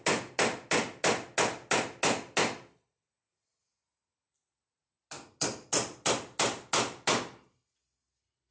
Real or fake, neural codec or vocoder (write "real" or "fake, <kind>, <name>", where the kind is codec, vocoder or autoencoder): real